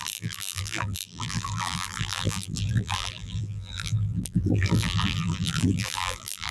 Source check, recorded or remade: remade